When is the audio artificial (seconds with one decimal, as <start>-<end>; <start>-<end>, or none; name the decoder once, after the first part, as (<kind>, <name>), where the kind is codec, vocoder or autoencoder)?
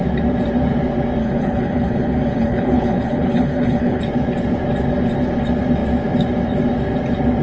1.2-4.0 (codec, HILCodec)